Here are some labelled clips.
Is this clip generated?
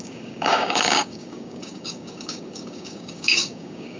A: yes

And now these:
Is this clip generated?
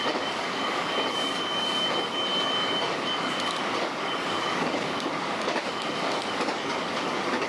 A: yes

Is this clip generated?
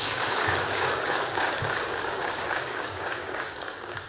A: yes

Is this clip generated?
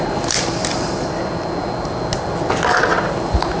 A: no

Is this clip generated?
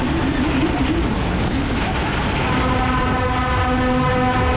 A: no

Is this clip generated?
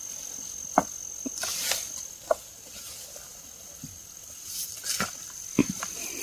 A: no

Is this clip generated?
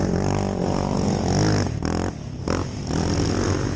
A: no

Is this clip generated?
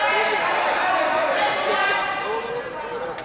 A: no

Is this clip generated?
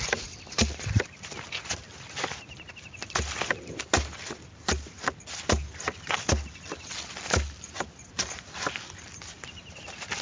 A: no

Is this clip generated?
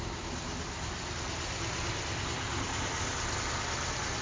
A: no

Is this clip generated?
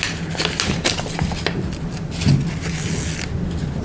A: no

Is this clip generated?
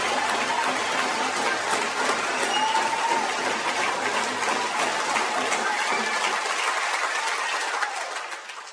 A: no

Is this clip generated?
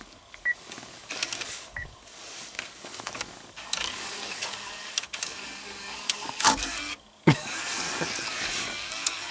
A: yes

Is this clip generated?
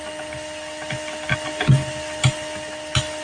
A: no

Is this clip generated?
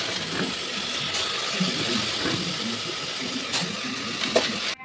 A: no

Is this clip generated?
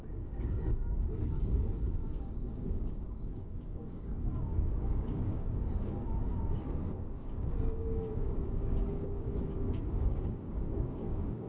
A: yes